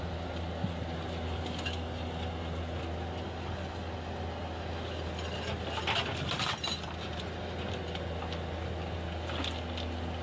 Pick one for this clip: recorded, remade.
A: recorded